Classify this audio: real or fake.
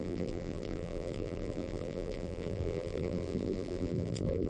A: fake